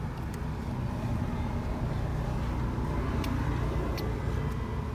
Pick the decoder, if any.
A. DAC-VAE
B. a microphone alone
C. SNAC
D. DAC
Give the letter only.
B